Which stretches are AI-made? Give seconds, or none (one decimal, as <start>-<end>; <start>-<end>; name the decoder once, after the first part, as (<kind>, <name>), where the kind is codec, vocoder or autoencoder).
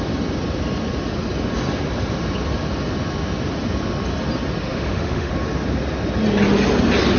4.6-5.3 (autoencoder, DAC-VAE)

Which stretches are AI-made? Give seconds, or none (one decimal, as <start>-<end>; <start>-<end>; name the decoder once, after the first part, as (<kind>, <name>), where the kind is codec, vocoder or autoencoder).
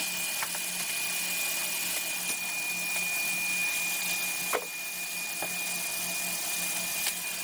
none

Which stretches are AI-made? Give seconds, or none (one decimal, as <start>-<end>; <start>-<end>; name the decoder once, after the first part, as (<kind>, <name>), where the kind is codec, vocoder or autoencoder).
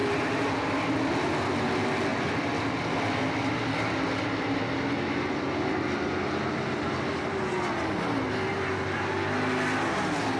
0.0-0.7 (vocoder, BigVGAN v2)